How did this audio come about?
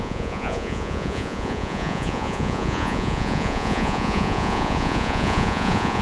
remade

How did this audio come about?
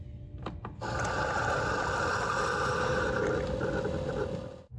recorded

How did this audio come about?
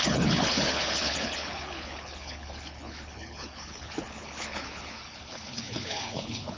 remade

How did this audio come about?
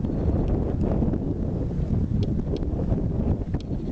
recorded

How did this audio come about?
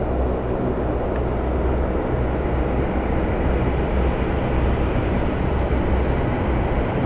recorded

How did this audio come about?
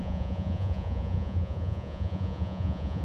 remade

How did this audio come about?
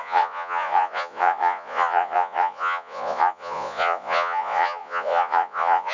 remade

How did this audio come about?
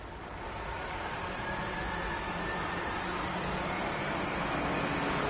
recorded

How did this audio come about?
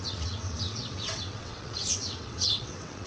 remade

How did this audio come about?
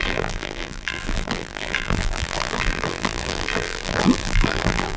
remade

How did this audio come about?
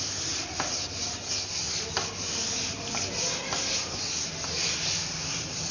recorded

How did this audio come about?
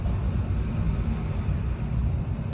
recorded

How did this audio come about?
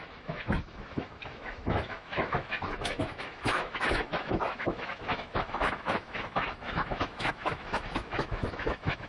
remade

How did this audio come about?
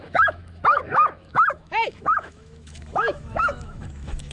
remade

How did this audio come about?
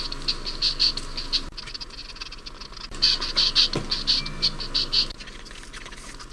recorded